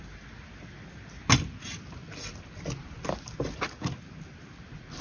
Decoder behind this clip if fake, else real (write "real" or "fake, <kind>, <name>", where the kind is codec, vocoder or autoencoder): real